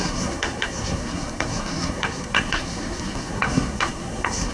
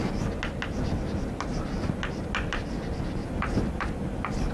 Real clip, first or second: second